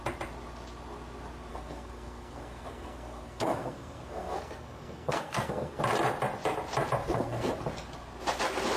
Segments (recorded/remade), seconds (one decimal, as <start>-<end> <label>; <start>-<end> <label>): 0.0-1.5 recorded; 1.5-5.8 remade; 5.8-7.0 recorded; 7.0-7.5 remade; 7.5-8.8 recorded